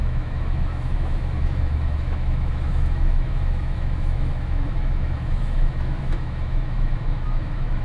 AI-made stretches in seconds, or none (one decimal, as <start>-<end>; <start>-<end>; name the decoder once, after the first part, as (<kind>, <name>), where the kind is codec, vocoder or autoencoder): 0.0-7.8 (autoencoder, DAC-VAE)